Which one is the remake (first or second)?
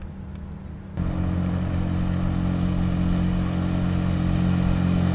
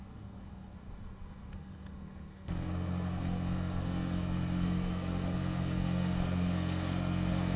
second